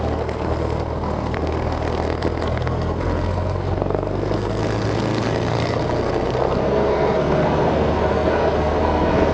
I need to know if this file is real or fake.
fake